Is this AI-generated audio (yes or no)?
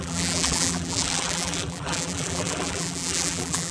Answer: yes